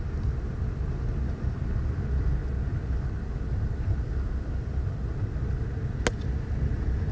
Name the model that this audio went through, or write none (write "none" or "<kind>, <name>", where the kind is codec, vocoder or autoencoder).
none